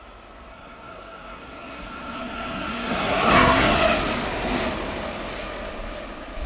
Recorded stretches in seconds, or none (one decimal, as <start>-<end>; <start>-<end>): 0.0-0.5; 3.7-6.5